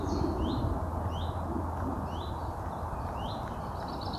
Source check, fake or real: real